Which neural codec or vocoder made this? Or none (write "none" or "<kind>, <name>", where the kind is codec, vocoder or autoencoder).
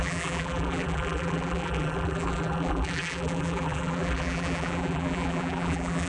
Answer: vocoder, BigVGAN v2